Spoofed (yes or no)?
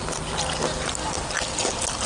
no